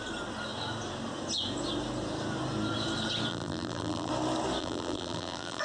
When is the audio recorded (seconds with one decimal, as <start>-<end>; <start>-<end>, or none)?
0.0-3.3; 4.1-4.6